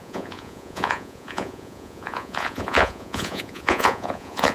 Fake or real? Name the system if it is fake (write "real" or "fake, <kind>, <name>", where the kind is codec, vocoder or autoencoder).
fake, vocoder, Vocos